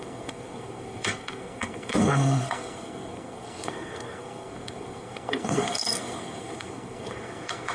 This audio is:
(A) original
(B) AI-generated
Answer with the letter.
B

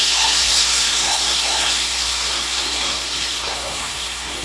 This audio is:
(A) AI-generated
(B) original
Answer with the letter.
A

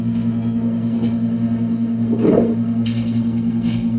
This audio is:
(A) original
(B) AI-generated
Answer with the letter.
B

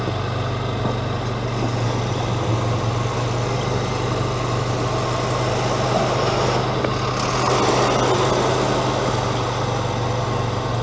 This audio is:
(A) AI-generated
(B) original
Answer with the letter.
B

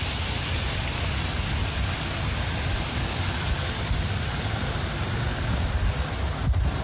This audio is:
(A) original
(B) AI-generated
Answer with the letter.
A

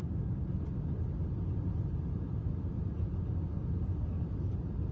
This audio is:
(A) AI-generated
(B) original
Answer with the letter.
B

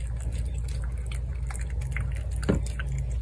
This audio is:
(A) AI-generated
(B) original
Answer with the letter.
B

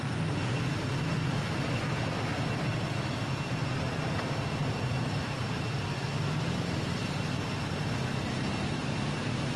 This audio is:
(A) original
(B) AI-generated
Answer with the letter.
A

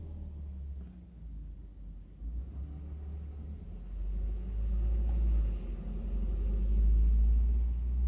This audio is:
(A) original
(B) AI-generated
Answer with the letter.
A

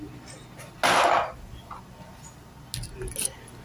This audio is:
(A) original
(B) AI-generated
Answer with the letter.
A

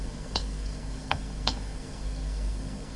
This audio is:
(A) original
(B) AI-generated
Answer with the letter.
B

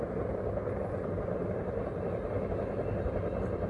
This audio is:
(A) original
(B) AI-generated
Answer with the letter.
A